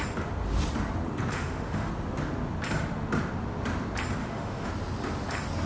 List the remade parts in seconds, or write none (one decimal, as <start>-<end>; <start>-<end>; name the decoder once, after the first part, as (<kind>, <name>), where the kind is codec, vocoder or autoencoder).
1.3-1.9 (autoencoder, DAC-VAE); 4.2-4.7